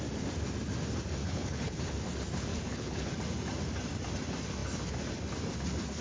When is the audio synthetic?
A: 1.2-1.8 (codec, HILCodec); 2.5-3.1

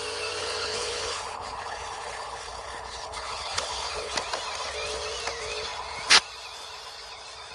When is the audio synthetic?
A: 0.4-4.1 (codec, HILCodec)

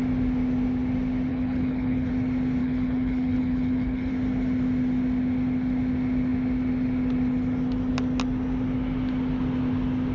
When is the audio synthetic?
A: 1.3-2.1 (codec, HILCodec); 2.6-4.1

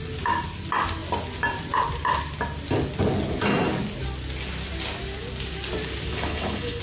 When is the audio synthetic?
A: 6.1-6.8 (codec, HILCodec)

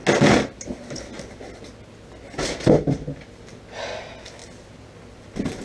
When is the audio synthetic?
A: none